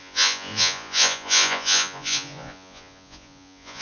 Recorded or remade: remade